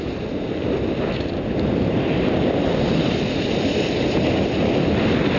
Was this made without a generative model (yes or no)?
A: yes